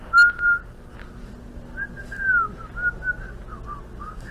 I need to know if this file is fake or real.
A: real